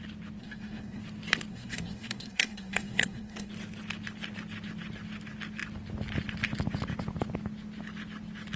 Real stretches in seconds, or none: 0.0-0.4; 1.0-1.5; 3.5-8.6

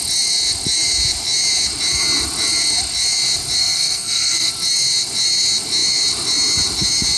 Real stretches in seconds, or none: 0.0-3.6; 4.5-7.2

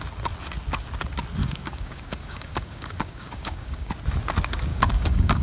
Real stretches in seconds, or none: 0.0-1.4; 3.9-4.7